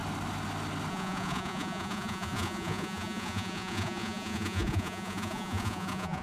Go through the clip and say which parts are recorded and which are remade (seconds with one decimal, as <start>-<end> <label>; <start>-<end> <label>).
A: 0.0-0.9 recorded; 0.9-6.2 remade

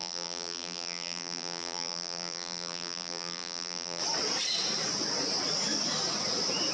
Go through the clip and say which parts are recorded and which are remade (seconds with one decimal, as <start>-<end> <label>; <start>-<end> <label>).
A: 0.0-4.0 remade; 4.0-6.7 recorded

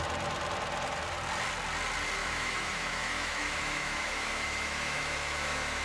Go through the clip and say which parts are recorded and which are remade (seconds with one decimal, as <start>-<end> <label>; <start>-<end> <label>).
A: 0.0-2.2 recorded; 2.2-5.8 remade

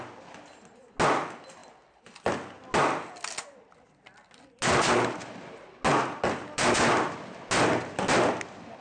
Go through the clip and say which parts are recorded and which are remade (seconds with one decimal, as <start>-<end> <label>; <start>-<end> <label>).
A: 0.0-8.8 recorded